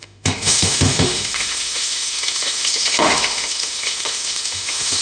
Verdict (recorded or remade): remade